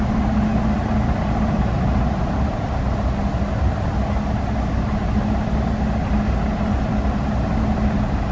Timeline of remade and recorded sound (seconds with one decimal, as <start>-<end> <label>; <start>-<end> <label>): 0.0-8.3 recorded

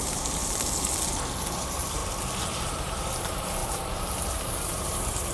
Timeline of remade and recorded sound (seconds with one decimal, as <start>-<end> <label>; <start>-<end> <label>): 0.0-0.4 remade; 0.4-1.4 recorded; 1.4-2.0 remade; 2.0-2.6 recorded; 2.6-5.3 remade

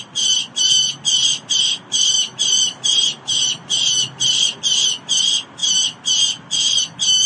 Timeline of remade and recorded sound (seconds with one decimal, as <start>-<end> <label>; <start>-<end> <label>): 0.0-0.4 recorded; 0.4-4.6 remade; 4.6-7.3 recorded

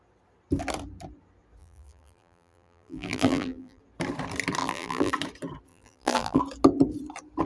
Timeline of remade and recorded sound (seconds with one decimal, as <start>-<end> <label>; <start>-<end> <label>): 0.0-1.6 recorded; 1.6-3.8 remade; 3.8-4.6 recorded; 4.6-5.1 remade; 5.1-5.7 recorded; 5.7-6.4 remade; 6.4-7.5 recorded